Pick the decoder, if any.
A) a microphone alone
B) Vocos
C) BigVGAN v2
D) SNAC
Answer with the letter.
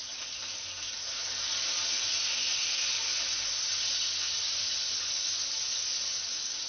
A